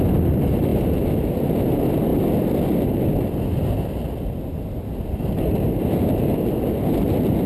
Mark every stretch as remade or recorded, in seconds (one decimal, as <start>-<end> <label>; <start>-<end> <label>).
0.0-7.5 recorded